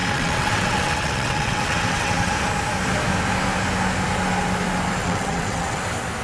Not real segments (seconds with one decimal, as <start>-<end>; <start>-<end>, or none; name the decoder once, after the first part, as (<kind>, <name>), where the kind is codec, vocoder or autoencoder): 0.0-2.3 (vocoder, WaveNeXt); 5.0-5.8